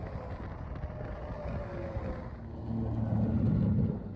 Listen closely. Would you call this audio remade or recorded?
recorded